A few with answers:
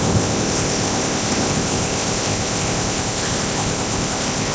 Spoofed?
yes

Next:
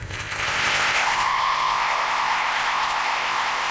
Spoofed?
yes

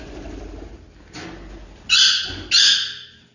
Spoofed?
no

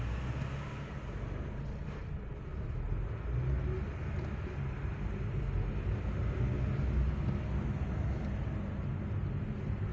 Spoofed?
no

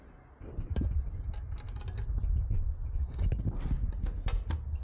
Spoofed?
no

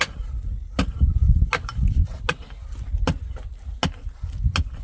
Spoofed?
no